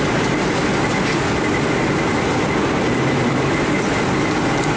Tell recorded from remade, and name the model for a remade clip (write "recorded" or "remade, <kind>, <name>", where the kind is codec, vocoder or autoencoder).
recorded